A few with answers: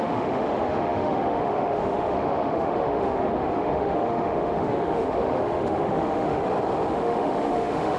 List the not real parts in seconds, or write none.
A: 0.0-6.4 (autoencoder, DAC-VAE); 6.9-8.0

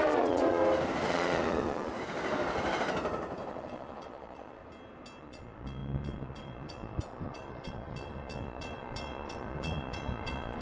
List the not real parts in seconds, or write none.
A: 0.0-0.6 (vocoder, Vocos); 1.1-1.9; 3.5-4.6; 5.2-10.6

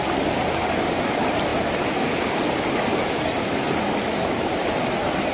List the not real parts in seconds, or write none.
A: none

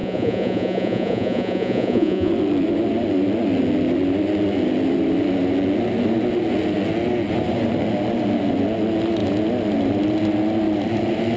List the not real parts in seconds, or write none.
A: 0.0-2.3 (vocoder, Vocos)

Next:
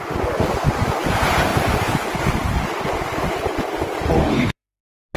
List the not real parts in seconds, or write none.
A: 4.2-4.8 (autoencoder, DAC-VAE)

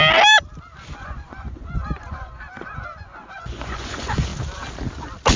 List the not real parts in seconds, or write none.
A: 0.9-4.3 (vocoder, Vocos)

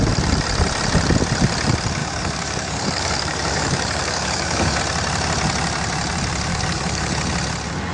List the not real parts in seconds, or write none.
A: 2.0-4.8 (codec, DAC); 6.5-7.2